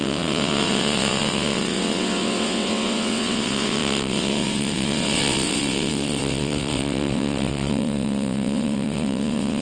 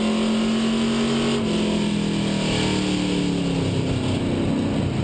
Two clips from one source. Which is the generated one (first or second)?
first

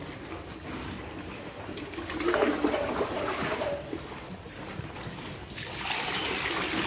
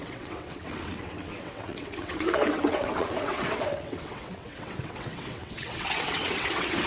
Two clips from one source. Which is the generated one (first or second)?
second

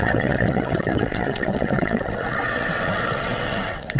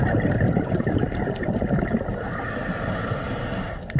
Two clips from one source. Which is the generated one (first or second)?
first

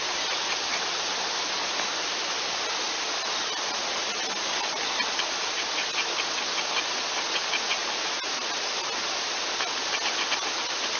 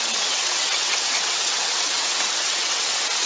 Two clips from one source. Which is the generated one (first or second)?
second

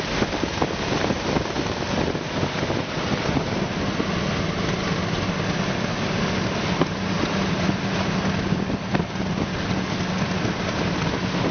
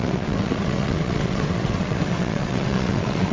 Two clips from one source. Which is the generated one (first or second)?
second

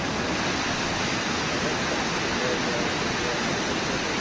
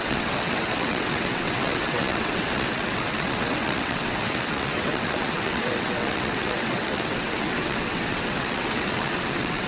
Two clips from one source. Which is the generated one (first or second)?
second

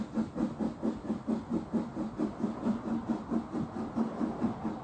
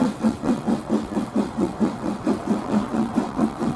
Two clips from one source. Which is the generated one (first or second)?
second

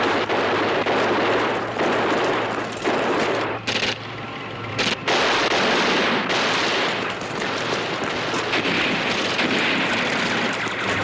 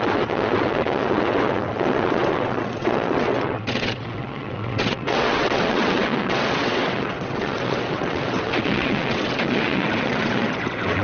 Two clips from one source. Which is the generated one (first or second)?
second